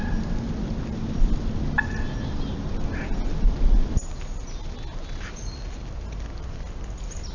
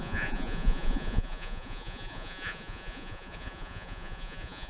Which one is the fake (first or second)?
second